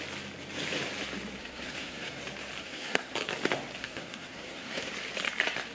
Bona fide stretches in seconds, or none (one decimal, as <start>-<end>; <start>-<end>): 0.0-1.4; 2.2-2.6; 3.1-3.8; 4.9-5.7